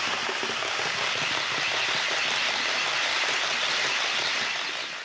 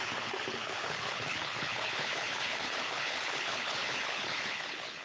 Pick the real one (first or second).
first